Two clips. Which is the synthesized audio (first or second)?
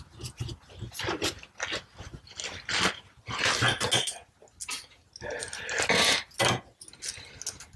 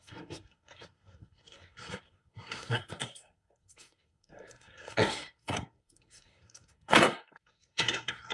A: second